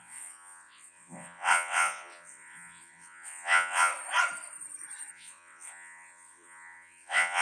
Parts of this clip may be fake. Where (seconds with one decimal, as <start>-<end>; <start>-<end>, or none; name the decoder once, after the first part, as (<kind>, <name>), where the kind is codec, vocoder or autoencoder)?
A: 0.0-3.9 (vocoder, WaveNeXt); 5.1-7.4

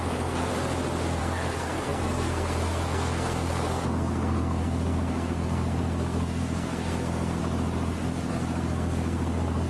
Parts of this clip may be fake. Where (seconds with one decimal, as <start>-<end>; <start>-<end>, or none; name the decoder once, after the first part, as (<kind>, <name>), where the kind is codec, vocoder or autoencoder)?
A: 0.0-0.5 (codec, SNAC); 1.2-7.4; 8.3-9.7

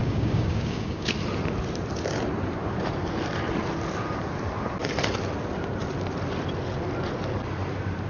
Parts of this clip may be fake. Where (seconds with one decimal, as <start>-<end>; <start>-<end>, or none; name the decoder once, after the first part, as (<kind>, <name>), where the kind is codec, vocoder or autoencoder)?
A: 0.0-1.1 (codec, DAC)